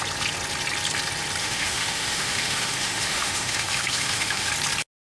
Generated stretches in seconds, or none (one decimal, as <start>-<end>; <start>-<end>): 1.4-4.5